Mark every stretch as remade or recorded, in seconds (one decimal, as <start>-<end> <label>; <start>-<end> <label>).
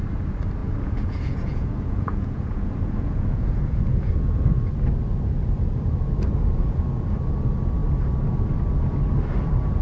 0.0-0.6 recorded; 0.6-4.7 remade; 4.7-9.8 recorded